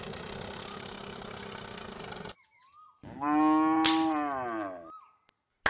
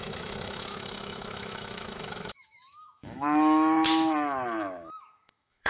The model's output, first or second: second